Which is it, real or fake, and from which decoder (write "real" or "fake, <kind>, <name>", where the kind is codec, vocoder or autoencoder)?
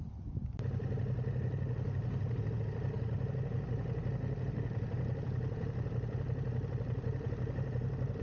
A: real